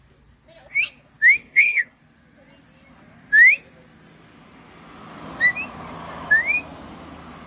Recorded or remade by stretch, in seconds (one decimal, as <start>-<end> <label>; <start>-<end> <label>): 0.0-1.4 recorded; 1.4-2.0 remade; 2.0-7.5 recorded